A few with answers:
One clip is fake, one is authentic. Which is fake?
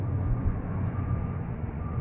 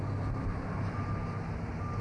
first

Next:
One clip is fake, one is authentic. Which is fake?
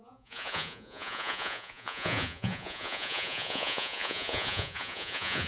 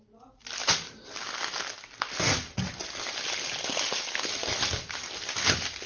first